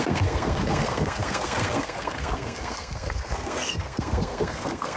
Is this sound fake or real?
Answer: fake